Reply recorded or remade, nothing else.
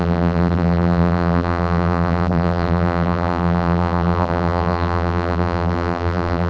remade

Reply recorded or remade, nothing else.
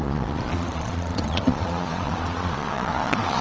remade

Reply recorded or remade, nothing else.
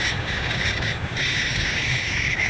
remade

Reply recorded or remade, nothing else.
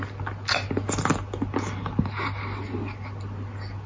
recorded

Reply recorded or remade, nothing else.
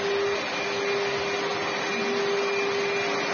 recorded